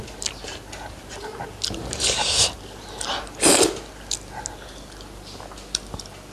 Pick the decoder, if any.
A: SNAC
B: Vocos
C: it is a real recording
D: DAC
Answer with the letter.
C